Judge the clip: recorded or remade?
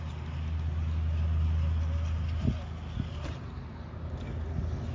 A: recorded